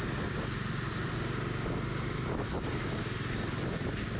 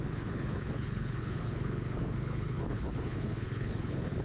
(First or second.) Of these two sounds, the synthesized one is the second